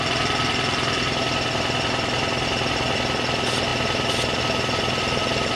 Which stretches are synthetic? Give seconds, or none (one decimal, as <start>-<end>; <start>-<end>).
none